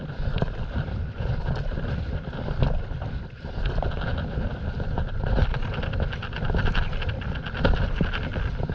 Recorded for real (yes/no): yes